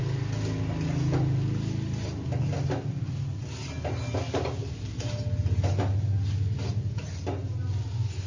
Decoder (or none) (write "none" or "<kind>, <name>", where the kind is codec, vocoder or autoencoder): none